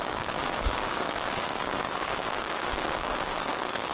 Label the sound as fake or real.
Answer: fake